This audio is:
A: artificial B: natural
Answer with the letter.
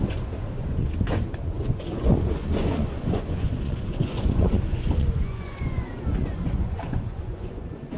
A